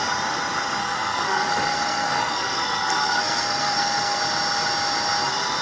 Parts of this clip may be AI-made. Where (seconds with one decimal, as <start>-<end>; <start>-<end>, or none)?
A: 0.8-4.2